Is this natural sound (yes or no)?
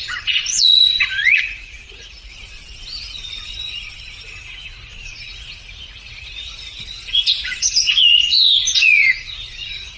no